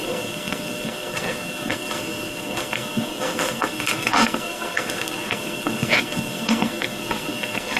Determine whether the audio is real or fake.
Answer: fake